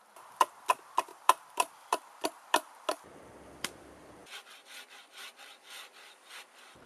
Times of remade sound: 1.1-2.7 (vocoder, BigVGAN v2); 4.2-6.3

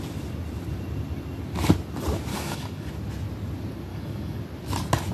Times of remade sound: 2.3-2.9 (codec, DAC); 3.9-4.4

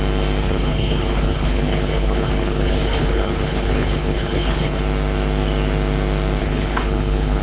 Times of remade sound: 0.4-4.8 (codec, HILCodec); 6.4-7.4